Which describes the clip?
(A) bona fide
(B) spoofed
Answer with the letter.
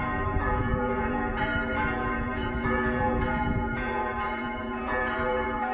B